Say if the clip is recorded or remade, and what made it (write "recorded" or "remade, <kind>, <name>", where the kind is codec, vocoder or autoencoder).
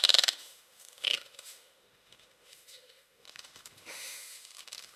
remade, autoencoder, DAC-VAE